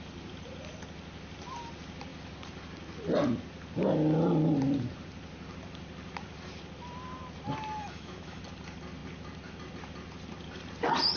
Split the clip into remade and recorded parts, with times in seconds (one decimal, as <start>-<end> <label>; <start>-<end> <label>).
0.0-7.8 recorded; 7.8-8.4 remade; 8.4-11.2 recorded